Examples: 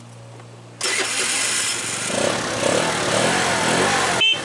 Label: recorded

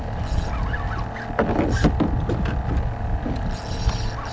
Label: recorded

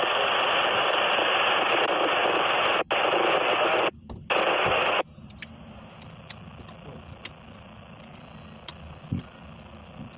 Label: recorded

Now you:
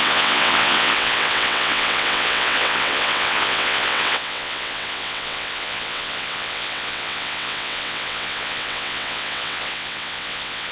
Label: remade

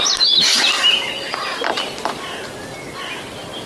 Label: recorded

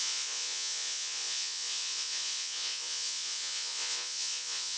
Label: remade